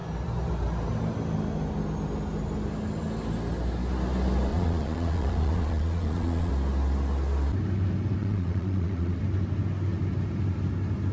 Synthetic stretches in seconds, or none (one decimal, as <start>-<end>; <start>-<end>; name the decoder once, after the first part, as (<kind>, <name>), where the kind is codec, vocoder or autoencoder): 4.5-6.5 (vocoder, Vocos); 8.2-9.2